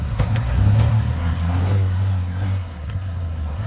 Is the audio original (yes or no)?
no